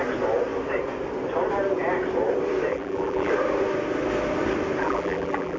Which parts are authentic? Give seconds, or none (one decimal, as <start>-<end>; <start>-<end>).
0.0-2.7; 3.3-4.8